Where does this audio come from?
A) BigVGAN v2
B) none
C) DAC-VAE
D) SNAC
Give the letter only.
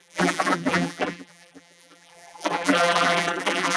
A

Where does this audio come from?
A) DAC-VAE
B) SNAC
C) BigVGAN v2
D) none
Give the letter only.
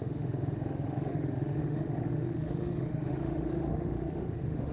A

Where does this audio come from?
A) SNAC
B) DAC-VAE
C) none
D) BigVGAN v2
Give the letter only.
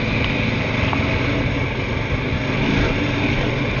C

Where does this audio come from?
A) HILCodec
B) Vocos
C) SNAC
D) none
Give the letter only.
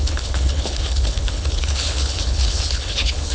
A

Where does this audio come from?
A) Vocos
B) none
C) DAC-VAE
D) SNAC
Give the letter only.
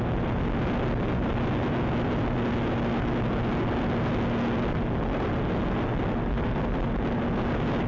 B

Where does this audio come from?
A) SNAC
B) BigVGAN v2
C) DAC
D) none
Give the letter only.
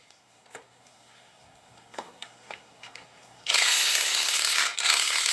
A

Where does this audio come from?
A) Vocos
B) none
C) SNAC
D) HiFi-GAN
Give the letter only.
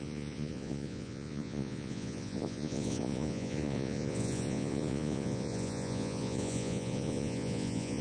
A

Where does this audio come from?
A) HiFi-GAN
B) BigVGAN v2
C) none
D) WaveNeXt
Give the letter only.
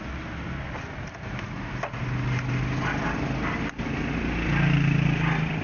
C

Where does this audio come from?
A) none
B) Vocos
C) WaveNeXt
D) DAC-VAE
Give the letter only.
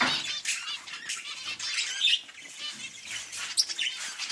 A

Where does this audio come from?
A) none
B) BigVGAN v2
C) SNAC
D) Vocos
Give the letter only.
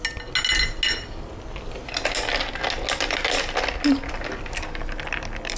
A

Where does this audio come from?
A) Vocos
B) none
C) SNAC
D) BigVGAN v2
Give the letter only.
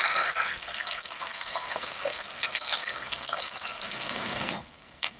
C